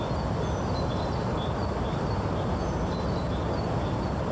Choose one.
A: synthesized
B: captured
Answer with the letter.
B